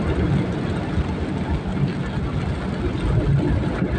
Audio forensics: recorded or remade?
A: recorded